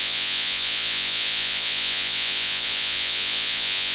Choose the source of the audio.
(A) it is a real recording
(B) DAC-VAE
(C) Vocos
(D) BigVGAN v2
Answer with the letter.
C